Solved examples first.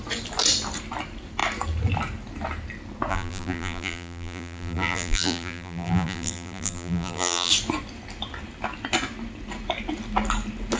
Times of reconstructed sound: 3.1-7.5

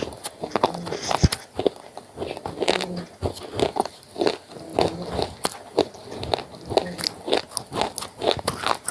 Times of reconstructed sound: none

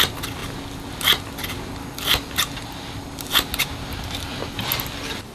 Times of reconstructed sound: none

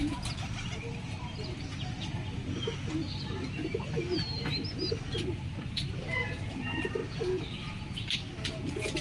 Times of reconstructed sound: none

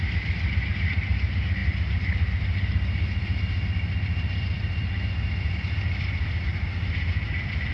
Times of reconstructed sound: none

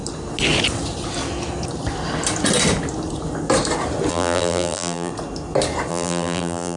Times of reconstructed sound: 4.1-5.1; 5.9-6.8

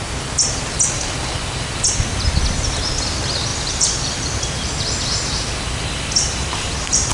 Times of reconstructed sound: none